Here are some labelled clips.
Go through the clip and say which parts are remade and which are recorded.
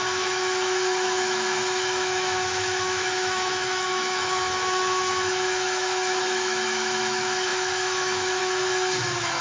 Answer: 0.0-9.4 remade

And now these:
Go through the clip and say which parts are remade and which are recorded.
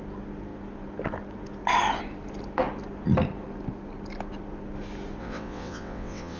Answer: 0.0-5.2 recorded; 5.2-6.4 remade